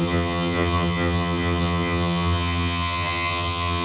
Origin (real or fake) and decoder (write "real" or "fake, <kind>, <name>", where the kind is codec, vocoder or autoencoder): fake, vocoder, HiFi-GAN